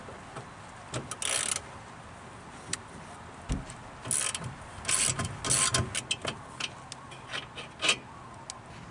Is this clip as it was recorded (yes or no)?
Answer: yes